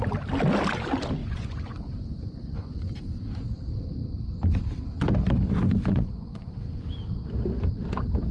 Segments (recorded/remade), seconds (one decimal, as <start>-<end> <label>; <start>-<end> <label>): 0.0-1.2 recorded; 1.2-2.9 remade; 2.9-5.9 recorded; 5.9-6.5 remade; 6.5-8.3 recorded